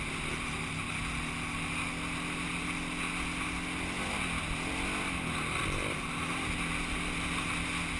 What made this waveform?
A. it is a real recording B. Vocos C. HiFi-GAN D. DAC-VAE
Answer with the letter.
A